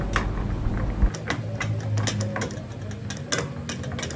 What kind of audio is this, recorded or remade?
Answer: recorded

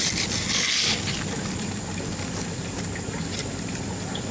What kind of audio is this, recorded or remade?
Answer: recorded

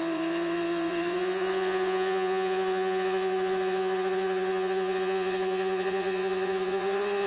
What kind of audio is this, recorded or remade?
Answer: remade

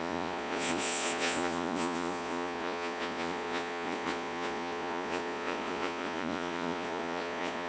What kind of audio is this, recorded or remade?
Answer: remade